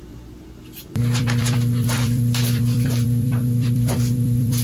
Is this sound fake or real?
fake